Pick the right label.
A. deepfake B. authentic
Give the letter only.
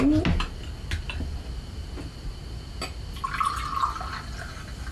B